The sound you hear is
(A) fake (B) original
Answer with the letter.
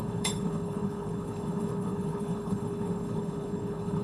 A